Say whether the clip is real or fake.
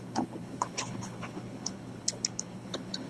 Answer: fake